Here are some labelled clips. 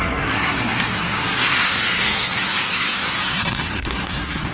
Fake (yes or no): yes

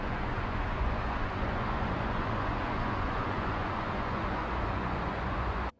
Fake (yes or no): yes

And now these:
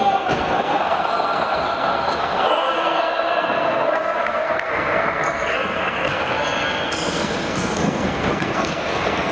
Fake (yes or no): yes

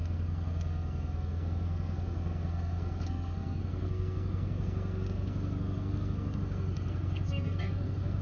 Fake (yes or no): yes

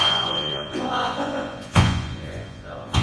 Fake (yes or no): yes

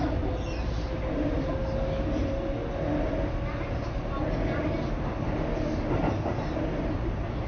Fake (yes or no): no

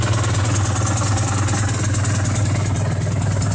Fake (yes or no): no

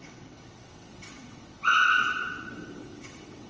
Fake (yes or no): yes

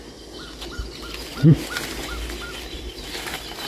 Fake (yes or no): no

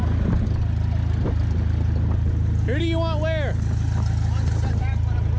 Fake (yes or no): no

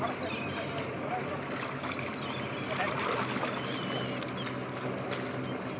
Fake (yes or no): no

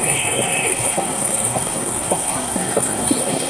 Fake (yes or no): yes